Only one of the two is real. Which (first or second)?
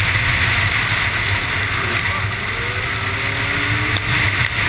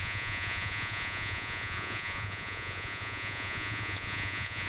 first